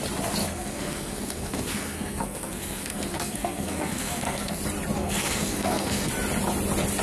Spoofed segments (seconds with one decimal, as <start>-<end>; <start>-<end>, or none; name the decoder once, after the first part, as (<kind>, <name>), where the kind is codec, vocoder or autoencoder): 0.4-4.6 (codec, SNAC); 5.0-6.1

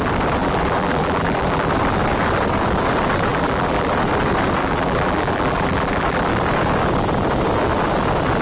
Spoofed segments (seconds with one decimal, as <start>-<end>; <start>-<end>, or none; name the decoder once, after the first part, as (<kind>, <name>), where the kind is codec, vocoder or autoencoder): 0.4-1.7 (vocoder, BigVGAN v2); 3.3-3.9; 4.6-6.3

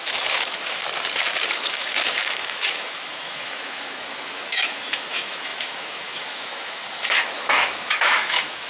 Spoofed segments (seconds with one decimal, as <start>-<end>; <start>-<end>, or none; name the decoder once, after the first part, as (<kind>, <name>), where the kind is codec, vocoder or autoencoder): 0.0-0.8 (autoencoder, DAC-VAE); 1.5-8.7